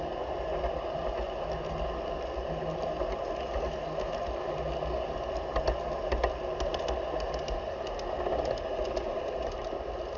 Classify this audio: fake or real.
real